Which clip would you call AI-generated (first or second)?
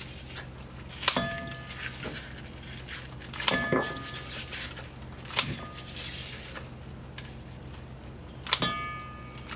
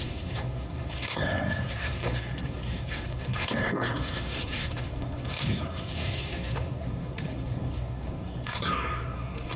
second